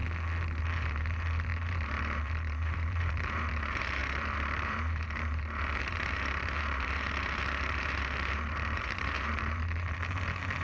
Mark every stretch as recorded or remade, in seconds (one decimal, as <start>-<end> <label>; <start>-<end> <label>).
0.0-0.6 recorded; 0.6-10.6 remade